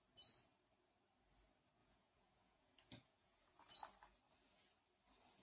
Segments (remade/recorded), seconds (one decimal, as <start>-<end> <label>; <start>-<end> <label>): 0.0-1.8 recorded; 1.8-3.8 remade; 3.8-5.4 recorded